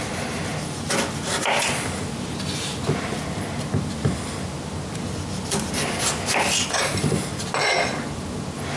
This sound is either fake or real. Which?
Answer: real